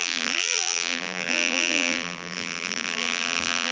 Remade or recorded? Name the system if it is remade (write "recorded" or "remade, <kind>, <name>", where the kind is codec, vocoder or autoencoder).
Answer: remade, vocoder, BigVGAN v2